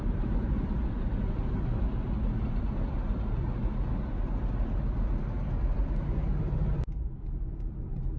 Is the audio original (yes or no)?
yes